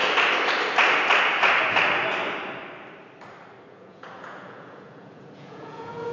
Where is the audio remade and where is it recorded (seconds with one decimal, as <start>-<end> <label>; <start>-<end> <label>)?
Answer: 0.0-3.7 recorded; 3.7-6.1 remade